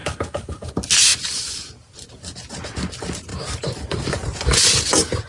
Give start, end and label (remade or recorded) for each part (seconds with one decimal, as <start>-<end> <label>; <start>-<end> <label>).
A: 0.0-0.7 remade; 0.7-5.3 recorded